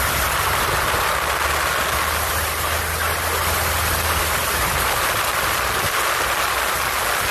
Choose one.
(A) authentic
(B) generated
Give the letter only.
A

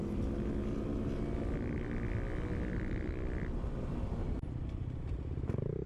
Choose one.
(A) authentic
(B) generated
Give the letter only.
A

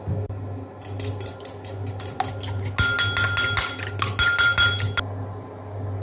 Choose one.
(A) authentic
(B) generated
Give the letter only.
A